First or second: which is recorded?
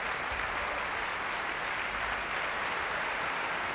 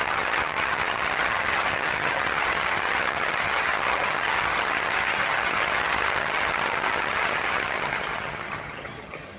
first